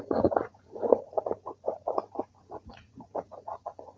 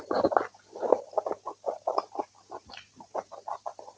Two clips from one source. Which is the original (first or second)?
second